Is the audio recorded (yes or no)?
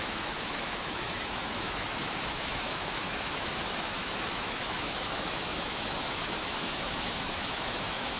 no